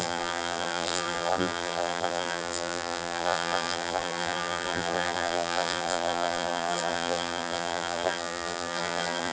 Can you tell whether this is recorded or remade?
remade